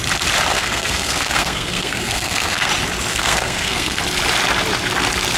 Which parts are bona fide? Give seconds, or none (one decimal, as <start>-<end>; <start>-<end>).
0.0-0.5; 2.7-3.1; 4.0-5.4